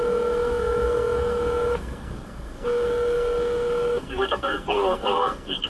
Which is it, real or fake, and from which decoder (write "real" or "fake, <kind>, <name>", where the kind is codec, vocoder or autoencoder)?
fake, codec, SNAC